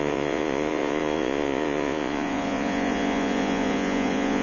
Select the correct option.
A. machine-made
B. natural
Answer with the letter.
A